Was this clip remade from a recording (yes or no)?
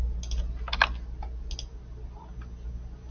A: no